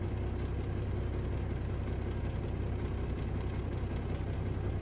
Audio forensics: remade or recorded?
recorded